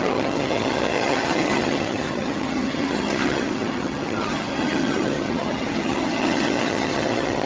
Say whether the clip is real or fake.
fake